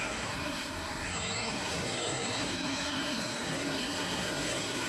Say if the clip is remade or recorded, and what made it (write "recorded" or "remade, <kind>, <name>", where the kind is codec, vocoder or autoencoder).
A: remade, codec, SNAC